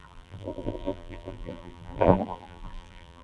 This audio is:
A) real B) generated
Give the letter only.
B